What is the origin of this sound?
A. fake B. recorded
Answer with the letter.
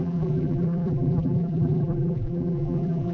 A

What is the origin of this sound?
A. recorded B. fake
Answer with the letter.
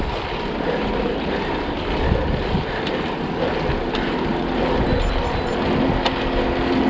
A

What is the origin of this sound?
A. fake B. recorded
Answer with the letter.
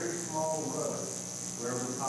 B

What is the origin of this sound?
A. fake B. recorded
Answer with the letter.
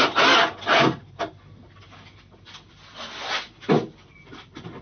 B